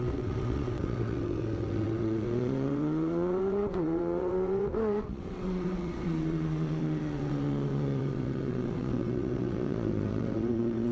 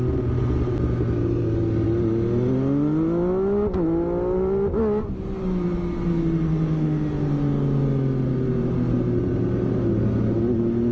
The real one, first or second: second